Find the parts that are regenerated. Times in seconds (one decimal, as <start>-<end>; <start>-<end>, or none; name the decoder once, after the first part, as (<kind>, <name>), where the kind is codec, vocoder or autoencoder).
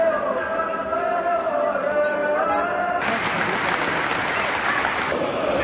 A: none